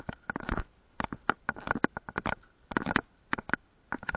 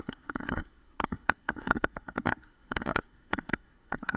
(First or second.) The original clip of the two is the first